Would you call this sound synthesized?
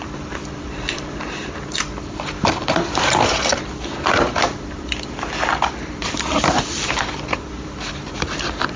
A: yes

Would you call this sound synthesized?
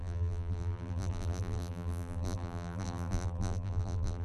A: yes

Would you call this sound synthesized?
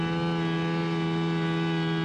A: no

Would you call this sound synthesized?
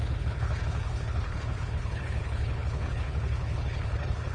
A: yes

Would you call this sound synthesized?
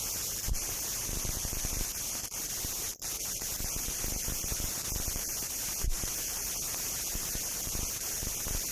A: yes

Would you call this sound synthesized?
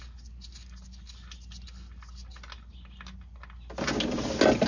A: no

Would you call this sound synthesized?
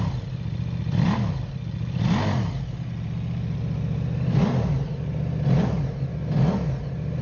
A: no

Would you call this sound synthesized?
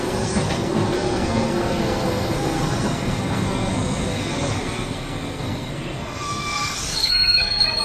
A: yes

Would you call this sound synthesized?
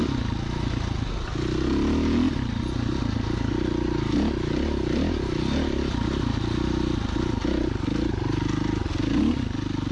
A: no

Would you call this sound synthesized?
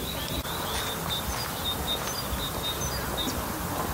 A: no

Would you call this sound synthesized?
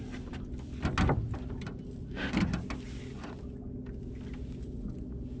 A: no